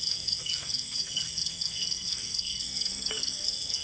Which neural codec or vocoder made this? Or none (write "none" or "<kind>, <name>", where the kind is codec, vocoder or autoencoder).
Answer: codec, SNAC